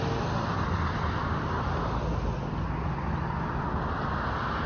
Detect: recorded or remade recorded